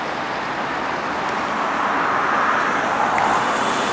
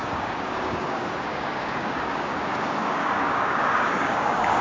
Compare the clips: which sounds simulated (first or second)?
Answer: second